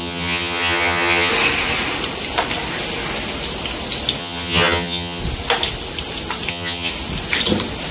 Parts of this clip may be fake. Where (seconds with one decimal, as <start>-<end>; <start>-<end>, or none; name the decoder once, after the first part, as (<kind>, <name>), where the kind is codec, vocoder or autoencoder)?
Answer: 0.0-1.3 (vocoder, HiFi-GAN); 4.2-5.2; 6.5-6.9